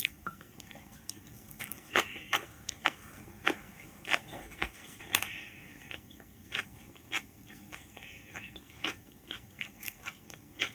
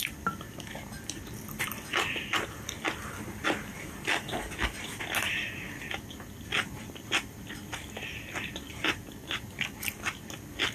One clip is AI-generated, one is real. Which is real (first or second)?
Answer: second